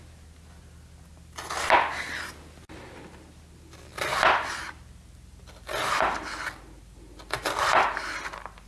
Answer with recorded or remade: recorded